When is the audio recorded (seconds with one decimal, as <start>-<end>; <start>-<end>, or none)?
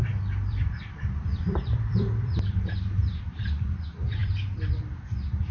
3.3-4.2; 4.7-5.5